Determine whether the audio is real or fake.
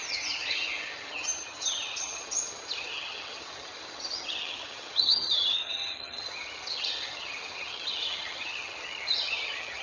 fake